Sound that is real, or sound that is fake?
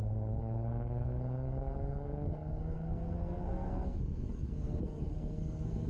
fake